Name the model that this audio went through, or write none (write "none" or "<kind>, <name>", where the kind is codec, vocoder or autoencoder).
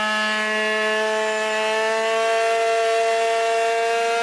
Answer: none